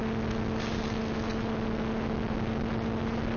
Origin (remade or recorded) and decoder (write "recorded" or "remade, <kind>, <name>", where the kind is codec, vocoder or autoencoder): recorded